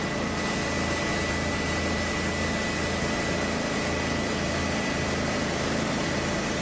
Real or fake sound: real